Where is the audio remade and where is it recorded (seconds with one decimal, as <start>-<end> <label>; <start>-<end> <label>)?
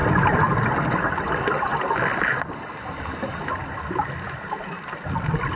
0.0-5.6 recorded